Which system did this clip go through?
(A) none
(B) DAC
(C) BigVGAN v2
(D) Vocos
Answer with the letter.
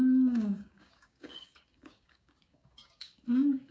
B